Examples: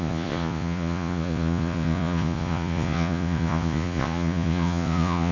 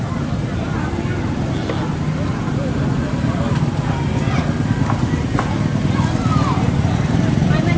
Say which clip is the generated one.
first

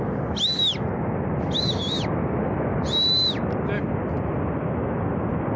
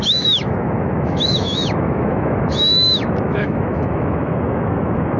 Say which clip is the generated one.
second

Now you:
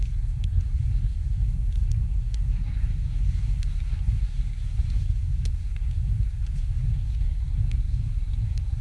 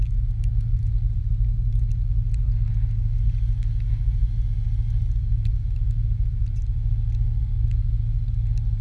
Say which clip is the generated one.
first